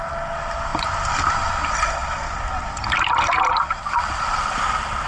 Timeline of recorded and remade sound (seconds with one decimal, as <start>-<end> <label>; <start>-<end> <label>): 0.0-0.7 recorded; 0.7-1.3 remade; 1.3-2.0 recorded; 2.0-3.4 remade; 3.4-3.8 recorded; 3.8-5.1 remade